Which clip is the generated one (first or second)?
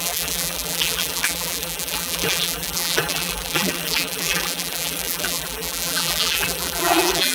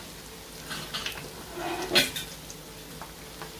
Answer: first